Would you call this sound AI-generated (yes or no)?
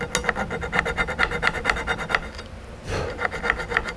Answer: no